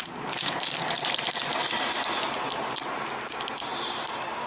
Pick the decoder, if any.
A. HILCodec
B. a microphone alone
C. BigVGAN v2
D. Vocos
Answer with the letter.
C